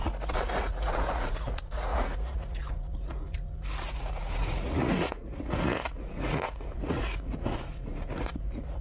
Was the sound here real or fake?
fake